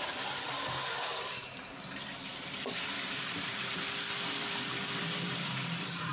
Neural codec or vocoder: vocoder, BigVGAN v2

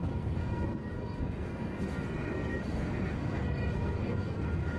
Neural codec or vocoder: codec, SNAC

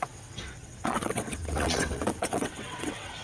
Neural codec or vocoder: vocoder, WaveNeXt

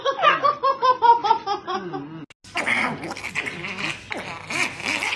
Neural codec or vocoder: none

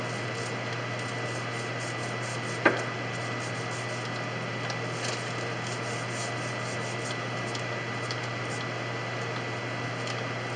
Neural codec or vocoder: none